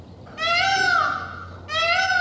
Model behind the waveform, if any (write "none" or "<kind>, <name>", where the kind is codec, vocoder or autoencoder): none